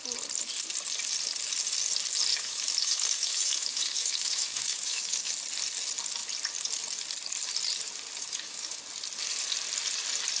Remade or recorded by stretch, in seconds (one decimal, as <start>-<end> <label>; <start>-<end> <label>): 0.0-2.3 recorded; 2.3-5.3 remade; 5.3-8.2 recorded; 8.2-8.8 remade; 8.8-10.4 recorded